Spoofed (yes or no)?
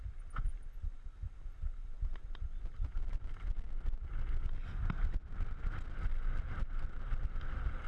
no